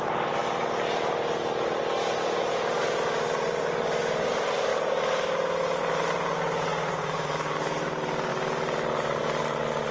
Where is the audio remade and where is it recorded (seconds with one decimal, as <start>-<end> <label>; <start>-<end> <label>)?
0.0-0.4 remade; 0.4-4.0 recorded; 4.0-4.7 remade; 4.7-5.8 recorded; 5.8-9.9 remade